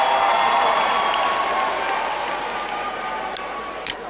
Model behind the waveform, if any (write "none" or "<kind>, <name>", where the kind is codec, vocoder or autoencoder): none